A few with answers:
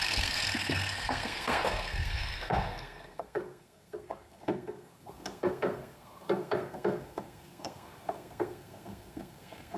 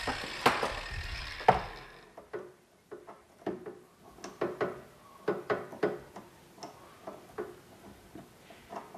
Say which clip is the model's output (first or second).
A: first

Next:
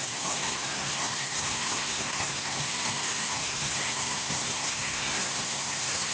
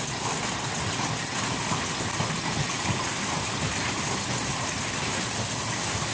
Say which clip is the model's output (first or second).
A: first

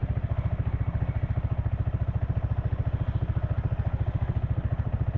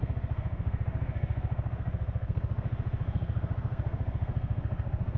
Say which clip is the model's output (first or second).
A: second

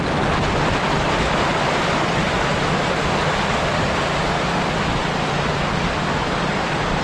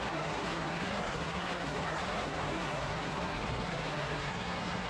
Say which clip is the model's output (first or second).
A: second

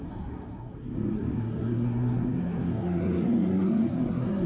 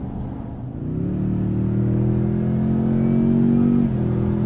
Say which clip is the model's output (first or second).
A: first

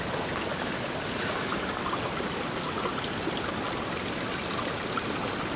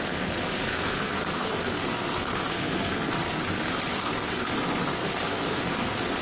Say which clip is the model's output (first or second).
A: second